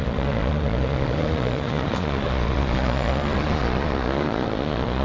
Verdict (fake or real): fake